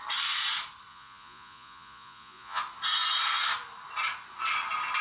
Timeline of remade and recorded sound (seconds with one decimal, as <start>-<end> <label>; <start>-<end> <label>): 0.0-0.9 recorded; 0.9-2.6 remade; 2.6-5.0 recorded